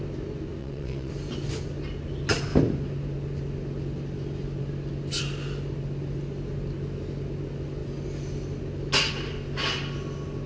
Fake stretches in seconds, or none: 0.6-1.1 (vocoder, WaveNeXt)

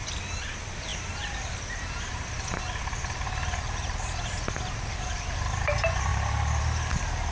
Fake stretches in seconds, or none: none

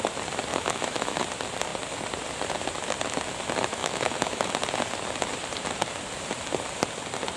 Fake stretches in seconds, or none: 0.5-1.2 (autoencoder, DAC-VAE); 3.8-4.5

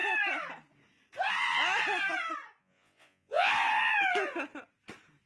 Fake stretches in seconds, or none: 2.6-3.5 (vocoder, Vocos)